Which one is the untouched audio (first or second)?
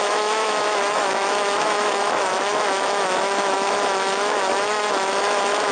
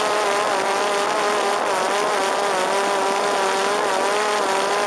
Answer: second